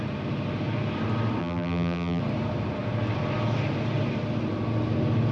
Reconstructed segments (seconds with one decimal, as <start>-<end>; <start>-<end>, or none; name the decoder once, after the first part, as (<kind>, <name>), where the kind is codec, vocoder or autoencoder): 1.4-2.2 (vocoder, BigVGAN v2)